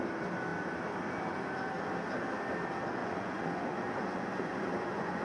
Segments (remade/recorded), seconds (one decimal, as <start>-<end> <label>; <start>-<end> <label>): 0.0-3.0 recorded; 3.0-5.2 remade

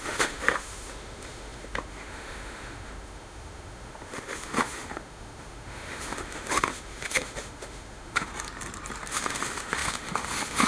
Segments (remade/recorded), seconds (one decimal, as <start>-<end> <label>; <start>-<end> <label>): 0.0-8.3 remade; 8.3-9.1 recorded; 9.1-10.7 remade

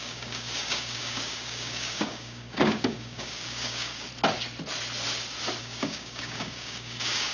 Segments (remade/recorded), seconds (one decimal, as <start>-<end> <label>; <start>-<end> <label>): 0.0-4.1 remade; 4.1-5.6 recorded; 5.6-7.3 remade